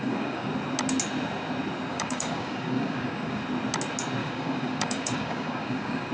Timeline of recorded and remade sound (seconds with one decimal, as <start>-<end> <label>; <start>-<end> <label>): 0.0-0.5 remade; 0.5-1.9 recorded; 1.9-3.4 remade; 3.4-4.2 recorded; 4.2-6.1 remade

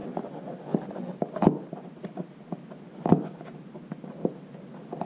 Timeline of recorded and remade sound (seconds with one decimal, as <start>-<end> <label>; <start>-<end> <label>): 0.0-5.1 recorded

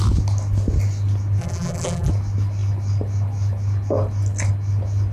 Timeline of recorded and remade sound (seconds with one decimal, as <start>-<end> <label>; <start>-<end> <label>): 0.0-1.4 recorded; 1.4-2.1 remade; 2.1-5.1 recorded

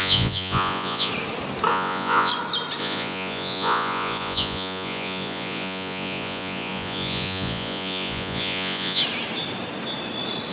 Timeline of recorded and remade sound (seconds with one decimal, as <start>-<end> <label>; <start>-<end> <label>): 0.0-1.1 remade; 1.1-1.7 recorded; 1.7-2.3 remade; 2.3-2.8 recorded; 2.8-9.0 remade; 9.0-10.5 recorded

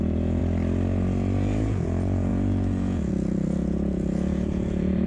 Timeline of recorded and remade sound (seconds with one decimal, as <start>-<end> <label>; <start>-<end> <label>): 0.0-0.4 remade; 0.4-1.6 recorded; 1.6-5.1 remade